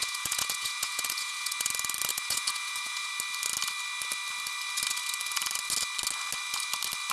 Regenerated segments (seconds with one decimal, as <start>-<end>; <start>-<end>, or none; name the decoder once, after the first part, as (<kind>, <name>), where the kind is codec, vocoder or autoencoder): 0.0-1.7 (vocoder, Vocos); 2.1-3.1